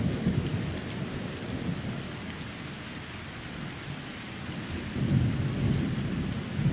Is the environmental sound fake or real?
real